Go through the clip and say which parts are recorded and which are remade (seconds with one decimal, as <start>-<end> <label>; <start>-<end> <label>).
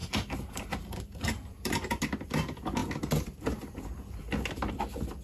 0.0-2.0 remade; 2.0-5.2 recorded